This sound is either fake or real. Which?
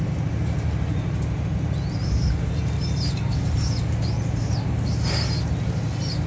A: real